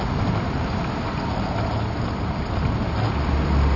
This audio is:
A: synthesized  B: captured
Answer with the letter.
B